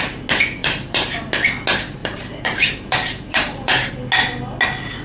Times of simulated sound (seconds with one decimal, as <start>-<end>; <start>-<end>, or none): 0.6-1.3; 2.0-3.9